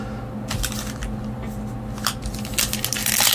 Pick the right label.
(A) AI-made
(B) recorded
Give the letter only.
B